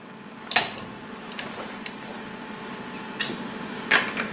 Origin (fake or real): real